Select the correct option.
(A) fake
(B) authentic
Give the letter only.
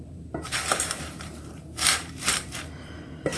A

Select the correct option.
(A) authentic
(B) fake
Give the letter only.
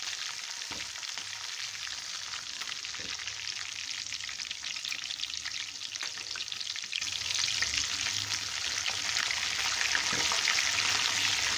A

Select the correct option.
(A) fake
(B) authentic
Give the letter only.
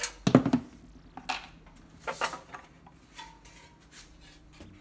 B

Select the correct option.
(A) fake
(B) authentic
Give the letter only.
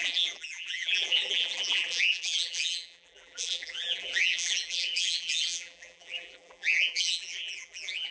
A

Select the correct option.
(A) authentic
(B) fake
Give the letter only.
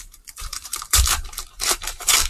B